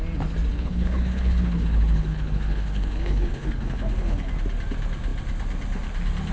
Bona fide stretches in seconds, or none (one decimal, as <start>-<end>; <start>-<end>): 0.0-0.5; 4.3-6.3